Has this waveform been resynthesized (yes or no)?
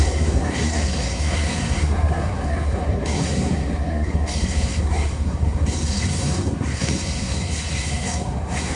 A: yes